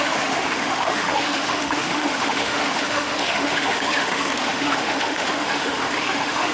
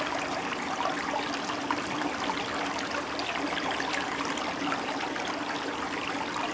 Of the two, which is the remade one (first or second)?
first